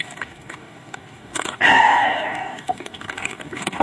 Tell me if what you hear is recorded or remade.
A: remade